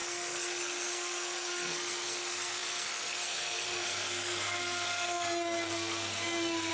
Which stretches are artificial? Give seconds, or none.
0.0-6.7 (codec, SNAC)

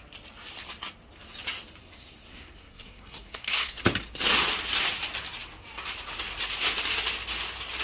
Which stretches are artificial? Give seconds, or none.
1.8-3.8 (codec, SNAC)

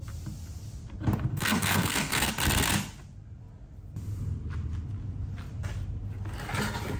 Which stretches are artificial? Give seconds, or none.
1.3-2.3 (codec, SNAC)

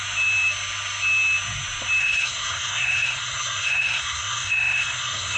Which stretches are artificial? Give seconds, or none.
2.0-5.4 (codec, SNAC)

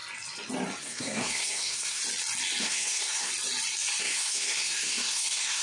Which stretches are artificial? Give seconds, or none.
0.8-2.0 (codec, SNAC); 2.6-3.3; 4.0-5.6

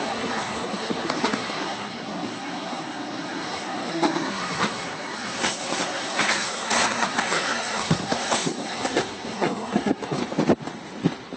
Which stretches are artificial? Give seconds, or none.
0.0-10.2 (codec, SNAC)

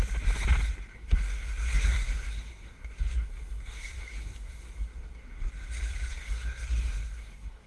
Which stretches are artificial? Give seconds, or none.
0.9-5.5 (codec, SNAC); 6.1-7.7

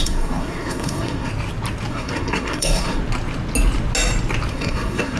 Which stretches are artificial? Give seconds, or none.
0.0-1.3 (codec, SNAC); 1.9-3.0; 4.5-5.2